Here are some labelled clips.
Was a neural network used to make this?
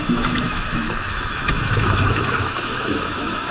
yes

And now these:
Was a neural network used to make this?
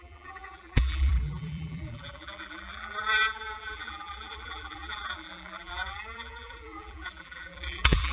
yes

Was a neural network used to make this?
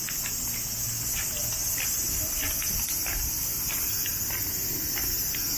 no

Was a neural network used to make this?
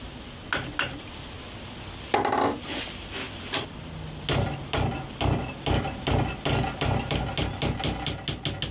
no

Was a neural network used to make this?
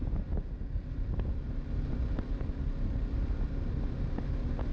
no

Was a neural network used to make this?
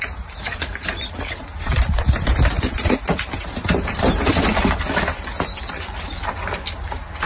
yes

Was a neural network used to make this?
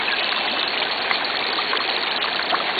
no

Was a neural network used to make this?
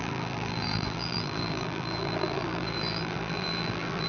yes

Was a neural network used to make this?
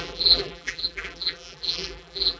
yes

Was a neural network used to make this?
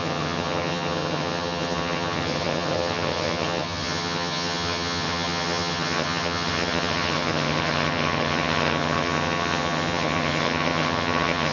yes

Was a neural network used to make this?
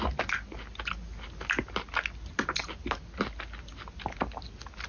no